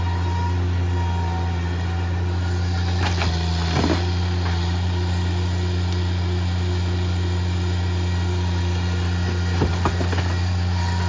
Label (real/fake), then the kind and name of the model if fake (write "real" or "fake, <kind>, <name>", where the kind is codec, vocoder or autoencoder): real